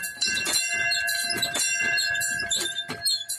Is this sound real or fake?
real